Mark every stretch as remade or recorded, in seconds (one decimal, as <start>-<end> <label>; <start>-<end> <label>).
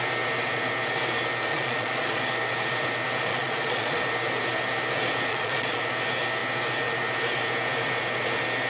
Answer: 0.0-1.5 recorded; 1.5-2.2 remade; 2.2-3.3 recorded; 3.3-4.0 remade; 4.0-5.3 recorded; 5.3-5.8 remade; 5.8-8.7 recorded